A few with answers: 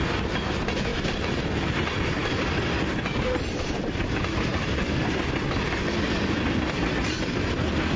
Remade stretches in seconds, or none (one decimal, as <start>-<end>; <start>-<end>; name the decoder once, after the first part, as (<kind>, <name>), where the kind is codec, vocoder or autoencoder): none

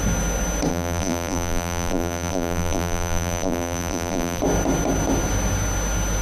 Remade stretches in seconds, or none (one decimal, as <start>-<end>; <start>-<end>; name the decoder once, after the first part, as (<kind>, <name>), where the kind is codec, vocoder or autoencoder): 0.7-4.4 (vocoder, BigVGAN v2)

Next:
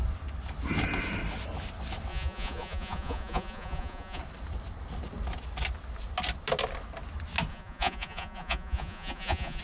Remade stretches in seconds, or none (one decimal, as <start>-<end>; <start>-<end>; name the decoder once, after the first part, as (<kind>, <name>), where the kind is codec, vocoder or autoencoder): 2.1-4.2 (vocoder, Vocos); 7.5-9.6

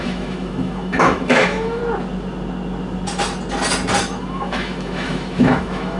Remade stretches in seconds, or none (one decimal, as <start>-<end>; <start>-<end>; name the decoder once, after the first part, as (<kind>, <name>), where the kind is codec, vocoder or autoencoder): 0.0-1.8 (autoencoder, DAC-VAE); 4.0-6.0

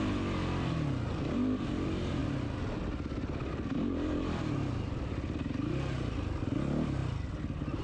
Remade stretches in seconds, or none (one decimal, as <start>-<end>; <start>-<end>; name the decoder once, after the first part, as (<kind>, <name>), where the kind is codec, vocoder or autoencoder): none

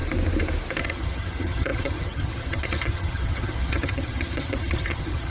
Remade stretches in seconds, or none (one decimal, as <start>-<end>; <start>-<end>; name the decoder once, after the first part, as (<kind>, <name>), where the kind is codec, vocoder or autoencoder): 0.8-5.3 (vocoder, HiFi-GAN)